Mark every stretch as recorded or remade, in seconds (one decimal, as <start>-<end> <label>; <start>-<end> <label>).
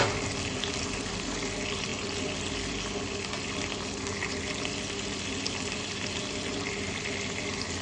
0.0-7.8 recorded